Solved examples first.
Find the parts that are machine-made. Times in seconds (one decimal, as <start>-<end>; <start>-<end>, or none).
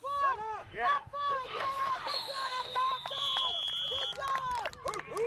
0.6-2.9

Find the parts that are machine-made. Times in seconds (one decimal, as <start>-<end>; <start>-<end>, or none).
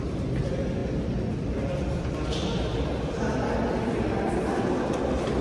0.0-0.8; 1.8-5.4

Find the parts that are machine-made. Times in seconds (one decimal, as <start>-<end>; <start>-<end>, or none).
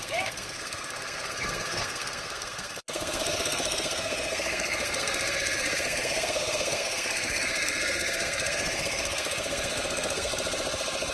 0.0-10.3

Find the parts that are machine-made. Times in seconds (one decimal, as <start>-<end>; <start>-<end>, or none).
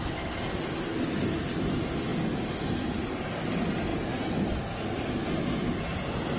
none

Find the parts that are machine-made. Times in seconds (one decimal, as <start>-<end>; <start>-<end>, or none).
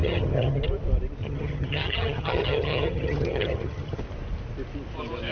0.0-0.6; 1.2-4.0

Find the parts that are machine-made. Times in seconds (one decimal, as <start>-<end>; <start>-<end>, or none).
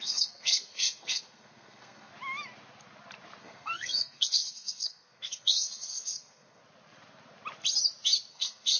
0.0-2.1; 3.4-6.6; 8.3-8.8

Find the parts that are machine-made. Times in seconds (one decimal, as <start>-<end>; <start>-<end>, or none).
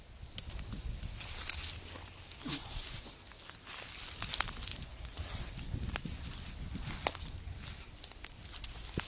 2.4-3.1; 4.7-5.5